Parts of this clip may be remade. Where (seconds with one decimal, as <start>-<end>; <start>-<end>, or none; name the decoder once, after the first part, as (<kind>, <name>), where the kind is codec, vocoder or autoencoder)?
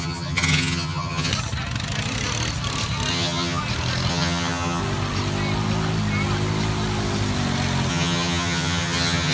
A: 0.0-1.3 (vocoder, HiFi-GAN); 3.1-3.6; 4.1-4.8; 7.9-9.3